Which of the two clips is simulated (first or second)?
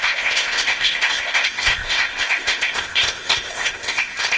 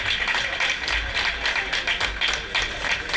first